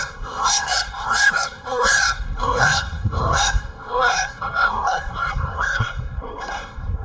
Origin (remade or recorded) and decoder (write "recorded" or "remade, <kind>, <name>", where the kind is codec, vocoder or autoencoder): remade, codec, SNAC